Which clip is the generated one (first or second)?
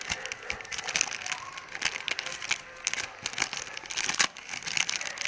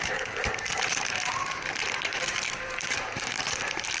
second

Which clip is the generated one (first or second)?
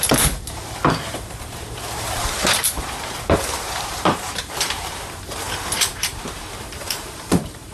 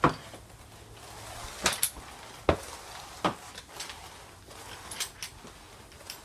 first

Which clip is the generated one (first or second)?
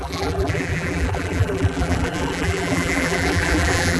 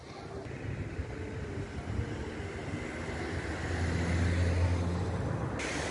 first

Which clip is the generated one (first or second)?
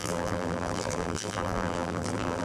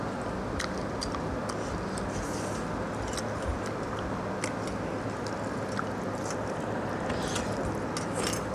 first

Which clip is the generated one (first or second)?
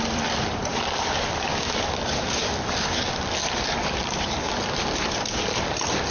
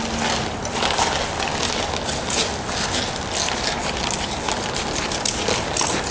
first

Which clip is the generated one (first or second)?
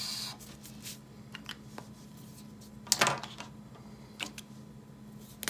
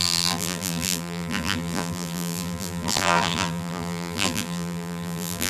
second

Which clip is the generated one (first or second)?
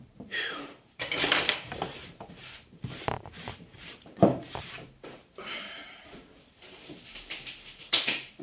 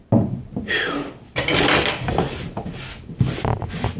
first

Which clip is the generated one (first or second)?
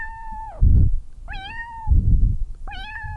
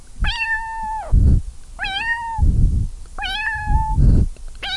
first